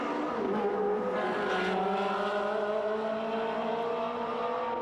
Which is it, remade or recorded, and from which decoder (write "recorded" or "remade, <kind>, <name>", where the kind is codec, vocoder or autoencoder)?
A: recorded